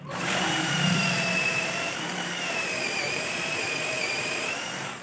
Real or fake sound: fake